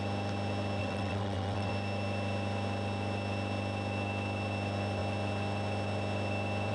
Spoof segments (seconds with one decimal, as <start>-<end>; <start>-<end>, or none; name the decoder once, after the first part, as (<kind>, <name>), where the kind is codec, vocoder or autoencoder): 0.8-1.7 (vocoder, WaveNeXt)